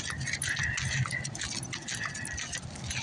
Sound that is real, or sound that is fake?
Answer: real